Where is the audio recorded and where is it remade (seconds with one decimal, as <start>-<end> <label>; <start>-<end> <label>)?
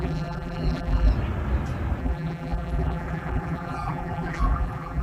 0.0-1.1 remade; 1.1-2.0 recorded; 2.0-5.0 remade